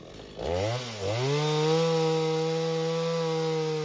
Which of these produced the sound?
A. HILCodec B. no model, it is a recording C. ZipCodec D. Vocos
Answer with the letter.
B